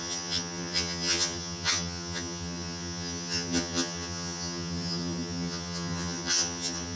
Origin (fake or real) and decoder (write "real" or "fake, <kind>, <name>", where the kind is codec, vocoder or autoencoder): fake, vocoder, HiFi-GAN